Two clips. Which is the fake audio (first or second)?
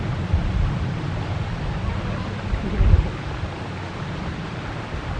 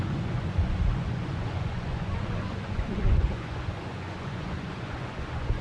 second